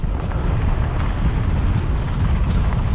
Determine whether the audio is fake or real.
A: real